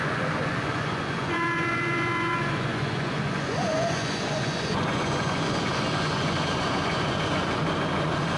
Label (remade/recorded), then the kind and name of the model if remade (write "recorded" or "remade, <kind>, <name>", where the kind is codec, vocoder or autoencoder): remade, vocoder, Vocos